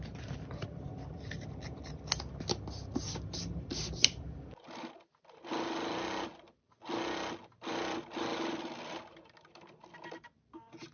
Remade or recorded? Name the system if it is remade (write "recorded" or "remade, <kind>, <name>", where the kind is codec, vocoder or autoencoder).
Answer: recorded